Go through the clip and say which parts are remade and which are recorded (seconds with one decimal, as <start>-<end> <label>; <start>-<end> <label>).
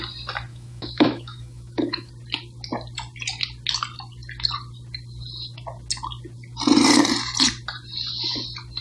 0.0-0.5 recorded; 0.5-2.1 remade; 2.1-8.8 recorded